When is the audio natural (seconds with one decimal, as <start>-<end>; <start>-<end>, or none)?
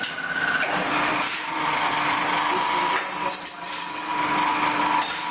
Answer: 0.0-5.3